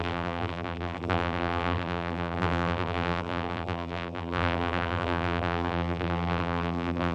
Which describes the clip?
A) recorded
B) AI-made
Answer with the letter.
B